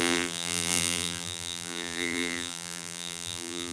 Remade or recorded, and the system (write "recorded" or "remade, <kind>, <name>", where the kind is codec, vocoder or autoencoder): remade, vocoder, BigVGAN v2